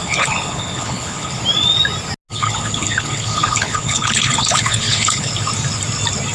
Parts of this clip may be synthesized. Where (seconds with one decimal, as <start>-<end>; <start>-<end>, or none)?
0.0-1.4; 2.3-5.3